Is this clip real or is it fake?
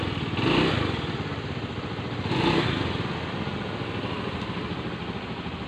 real